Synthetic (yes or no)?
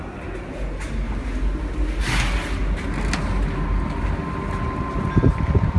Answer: no